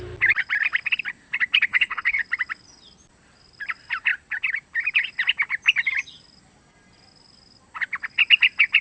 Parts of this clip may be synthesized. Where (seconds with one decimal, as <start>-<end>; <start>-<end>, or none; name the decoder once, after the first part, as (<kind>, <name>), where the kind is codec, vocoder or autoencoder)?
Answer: 1.7-2.2 (codec, HILCodec)